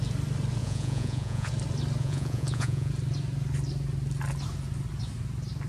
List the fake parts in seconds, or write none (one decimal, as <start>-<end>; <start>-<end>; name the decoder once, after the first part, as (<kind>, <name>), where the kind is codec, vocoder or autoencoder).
0.6-1.5 (vocoder, Vocos); 2.0-2.9